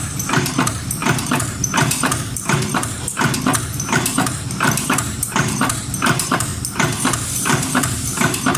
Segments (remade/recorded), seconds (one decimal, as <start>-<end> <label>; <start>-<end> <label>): 0.0-6.5 remade; 6.5-7.3 recorded; 7.3-8.6 remade